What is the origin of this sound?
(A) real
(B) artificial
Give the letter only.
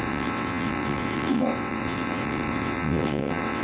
B